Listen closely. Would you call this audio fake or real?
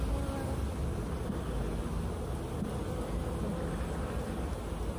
real